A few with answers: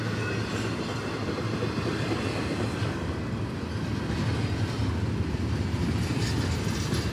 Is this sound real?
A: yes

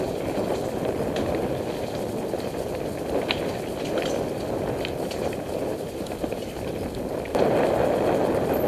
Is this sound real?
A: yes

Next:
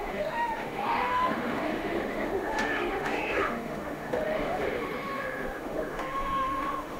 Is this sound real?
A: no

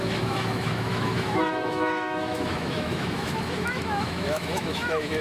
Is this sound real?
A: no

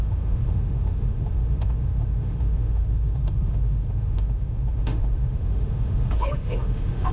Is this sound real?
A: no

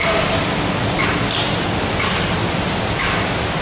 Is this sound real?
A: yes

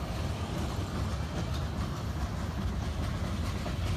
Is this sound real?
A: yes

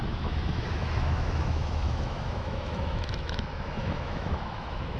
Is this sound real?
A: no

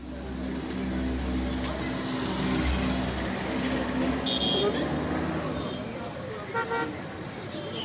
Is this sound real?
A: yes